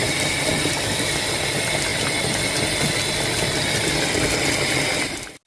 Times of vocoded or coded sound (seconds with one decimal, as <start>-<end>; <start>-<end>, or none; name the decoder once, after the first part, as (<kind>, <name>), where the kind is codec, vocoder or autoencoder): none